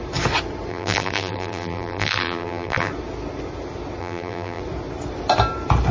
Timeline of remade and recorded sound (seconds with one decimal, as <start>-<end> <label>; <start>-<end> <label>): 0.0-0.7 recorded; 0.7-2.9 remade; 2.9-4.0 recorded; 4.0-4.6 remade; 4.6-5.9 recorded